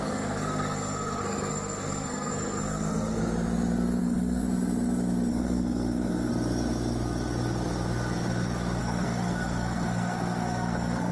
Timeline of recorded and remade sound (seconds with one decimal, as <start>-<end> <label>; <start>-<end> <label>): 0.0-3.2 remade; 3.2-4.0 recorded; 4.0-4.4 remade; 4.4-5.3 recorded; 5.3-6.3 remade; 6.3-8.8 recorded; 8.8-11.1 remade